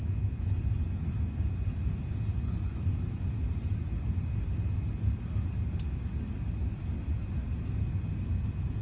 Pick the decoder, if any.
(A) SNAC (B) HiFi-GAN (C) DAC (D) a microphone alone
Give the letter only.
D